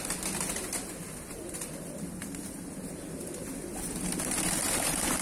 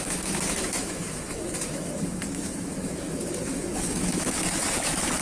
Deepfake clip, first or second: second